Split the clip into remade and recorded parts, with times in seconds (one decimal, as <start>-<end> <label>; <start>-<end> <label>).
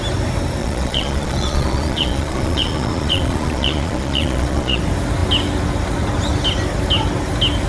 0.0-0.6 recorded; 0.6-4.8 remade; 4.8-7.7 recorded